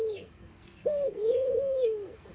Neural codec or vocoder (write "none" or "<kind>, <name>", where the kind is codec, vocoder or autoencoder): codec, SNAC